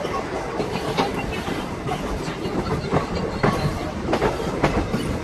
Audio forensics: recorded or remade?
remade